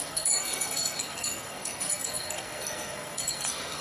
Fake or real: fake